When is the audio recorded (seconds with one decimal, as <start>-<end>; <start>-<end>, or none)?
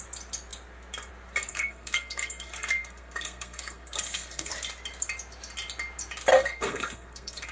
0.0-1.5; 4.5-6.3